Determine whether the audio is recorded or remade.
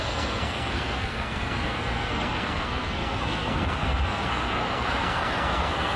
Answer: remade